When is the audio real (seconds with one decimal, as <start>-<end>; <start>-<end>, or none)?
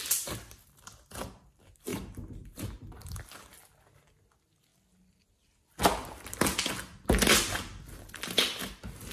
0.0-9.1